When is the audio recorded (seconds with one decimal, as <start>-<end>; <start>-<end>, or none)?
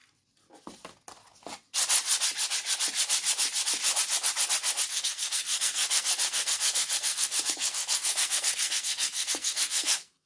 0.0-4.9